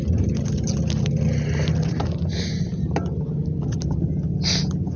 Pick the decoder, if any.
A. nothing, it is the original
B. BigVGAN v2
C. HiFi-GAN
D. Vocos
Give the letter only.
A